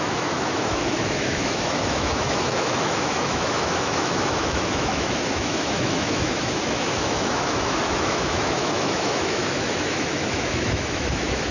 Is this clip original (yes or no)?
no